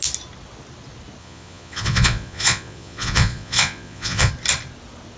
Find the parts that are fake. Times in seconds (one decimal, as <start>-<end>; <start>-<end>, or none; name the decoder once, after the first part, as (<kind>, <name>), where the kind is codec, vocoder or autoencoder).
1.2-4.3 (vocoder, Vocos)